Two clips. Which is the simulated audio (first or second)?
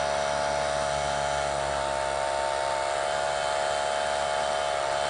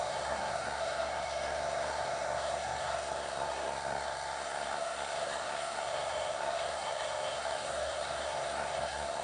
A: second